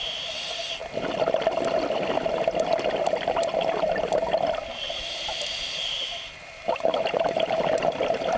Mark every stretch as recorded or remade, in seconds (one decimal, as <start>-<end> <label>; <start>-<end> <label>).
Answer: 0.0-0.8 remade; 0.8-5.1 recorded; 5.1-5.5 remade; 5.5-6.4 recorded; 6.4-8.4 remade